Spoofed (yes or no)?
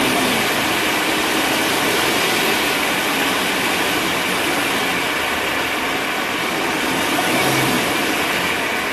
no